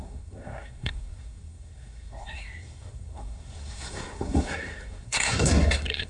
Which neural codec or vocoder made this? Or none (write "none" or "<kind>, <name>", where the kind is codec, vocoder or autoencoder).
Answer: codec, SNAC